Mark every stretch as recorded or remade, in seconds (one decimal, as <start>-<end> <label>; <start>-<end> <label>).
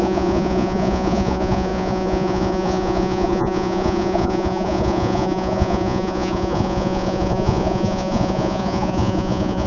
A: 0.0-9.7 remade